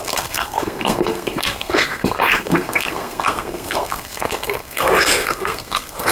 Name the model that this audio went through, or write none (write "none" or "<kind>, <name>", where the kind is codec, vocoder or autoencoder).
codec, SNAC